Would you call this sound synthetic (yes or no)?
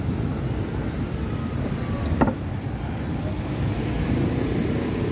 no